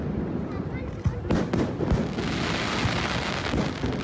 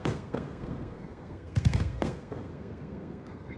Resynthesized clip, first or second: second